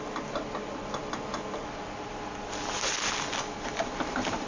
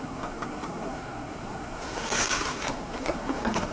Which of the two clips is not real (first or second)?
second